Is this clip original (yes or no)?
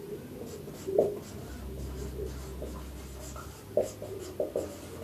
yes